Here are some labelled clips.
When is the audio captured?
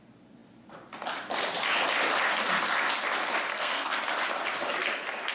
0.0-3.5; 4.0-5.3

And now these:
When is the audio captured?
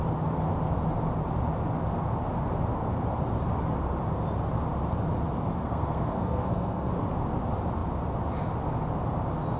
0.0-5.5; 7.0-9.6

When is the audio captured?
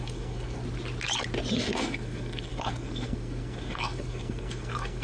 0.6-1.6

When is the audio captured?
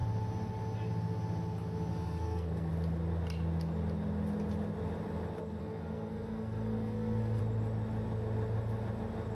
0.0-1.9; 2.7-5.6; 7.4-9.3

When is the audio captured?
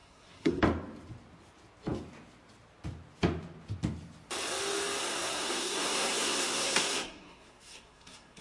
0.6-5.0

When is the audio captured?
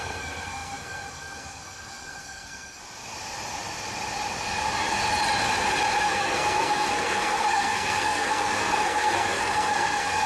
2.8-6.0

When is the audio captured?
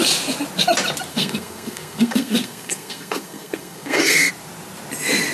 0.0-1.1; 4.3-5.3